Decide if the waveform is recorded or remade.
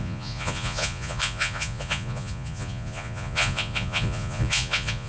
remade